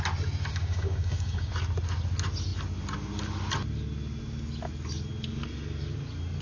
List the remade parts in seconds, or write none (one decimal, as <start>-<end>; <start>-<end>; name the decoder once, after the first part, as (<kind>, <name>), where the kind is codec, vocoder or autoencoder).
0.5-1.5 (codec, DAC)